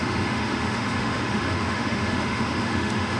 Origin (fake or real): fake